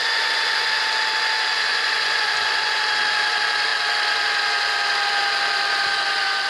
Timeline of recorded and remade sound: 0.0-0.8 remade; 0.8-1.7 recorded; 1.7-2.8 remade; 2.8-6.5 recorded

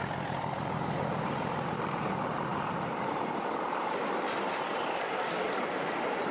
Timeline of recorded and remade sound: 0.0-2.5 recorded; 2.5-6.3 remade